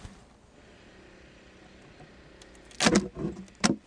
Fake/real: real